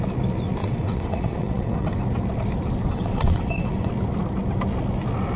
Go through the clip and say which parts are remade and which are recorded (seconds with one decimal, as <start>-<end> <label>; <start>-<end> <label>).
0.0-0.6 recorded; 0.6-2.0 remade; 2.0-2.9 recorded; 2.9-3.9 remade; 3.9-5.4 recorded

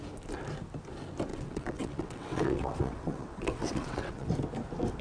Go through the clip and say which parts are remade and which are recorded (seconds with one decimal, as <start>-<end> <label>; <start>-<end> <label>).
0.0-1.3 recorded; 1.3-4.3 remade; 4.3-5.0 recorded

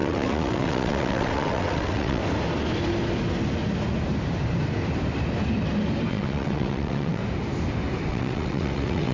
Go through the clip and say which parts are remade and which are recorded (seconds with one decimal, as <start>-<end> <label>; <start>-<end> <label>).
0.0-2.2 remade; 2.2-6.1 recorded; 6.1-7.2 remade; 7.2-8.1 recorded; 8.1-9.1 remade